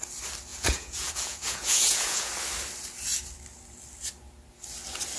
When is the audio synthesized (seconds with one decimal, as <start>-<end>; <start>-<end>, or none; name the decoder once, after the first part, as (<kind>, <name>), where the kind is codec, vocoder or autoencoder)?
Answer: 0.5-2.3 (vocoder, Vocos)